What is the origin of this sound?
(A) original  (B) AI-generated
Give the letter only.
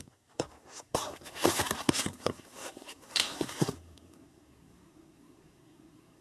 B